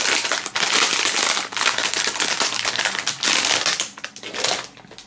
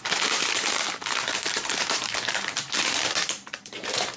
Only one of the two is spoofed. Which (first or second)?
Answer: second